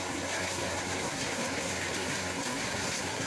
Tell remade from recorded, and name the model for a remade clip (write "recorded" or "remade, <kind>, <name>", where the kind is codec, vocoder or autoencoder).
remade, codec, SNAC